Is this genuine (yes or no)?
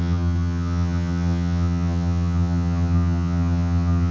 no